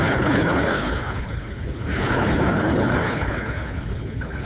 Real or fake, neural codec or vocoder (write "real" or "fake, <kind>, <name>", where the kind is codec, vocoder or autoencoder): fake, codec, HILCodec